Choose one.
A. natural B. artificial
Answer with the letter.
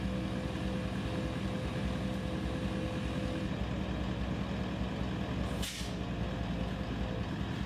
A